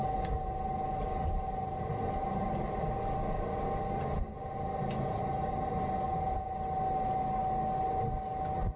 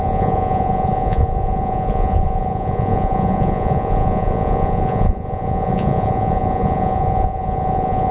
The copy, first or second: second